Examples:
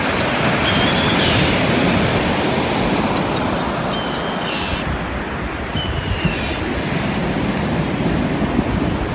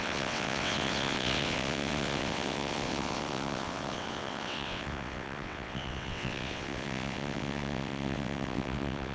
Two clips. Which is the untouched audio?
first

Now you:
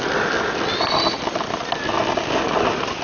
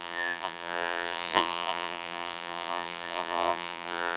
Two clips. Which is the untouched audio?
first